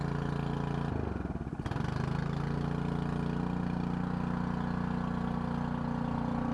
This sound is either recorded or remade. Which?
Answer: recorded